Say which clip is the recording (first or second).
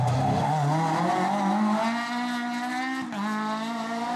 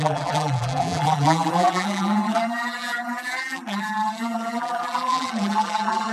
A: first